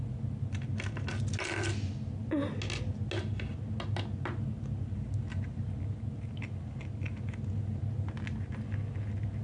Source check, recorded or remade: recorded